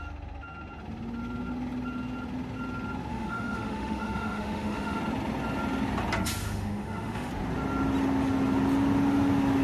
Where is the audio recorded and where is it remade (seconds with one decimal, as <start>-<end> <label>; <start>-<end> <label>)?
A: 0.0-3.1 recorded; 3.1-5.0 remade; 5.0-6.4 recorded; 6.4-7.3 remade; 7.3-9.6 recorded